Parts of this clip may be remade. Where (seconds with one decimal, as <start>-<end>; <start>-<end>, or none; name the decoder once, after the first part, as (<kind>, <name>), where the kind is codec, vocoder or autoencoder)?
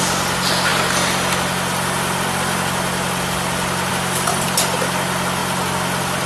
none